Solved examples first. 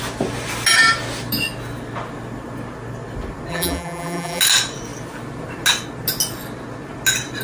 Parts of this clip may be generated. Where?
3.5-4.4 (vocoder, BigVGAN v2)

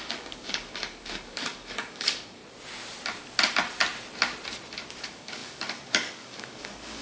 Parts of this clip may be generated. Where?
0.0-2.4 (codec, DAC); 5.0-7.0

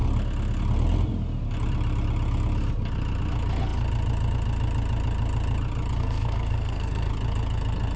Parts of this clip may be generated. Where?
6.0-7.1 (codec, SNAC)